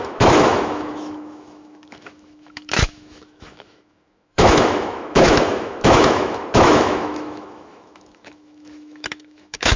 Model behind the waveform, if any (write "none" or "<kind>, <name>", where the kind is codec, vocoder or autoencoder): autoencoder, DAC-VAE